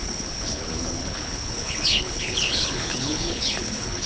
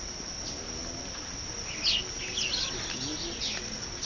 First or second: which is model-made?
first